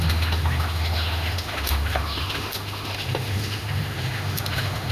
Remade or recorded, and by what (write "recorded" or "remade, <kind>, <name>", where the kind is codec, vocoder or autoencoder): remade, autoencoder, DAC-VAE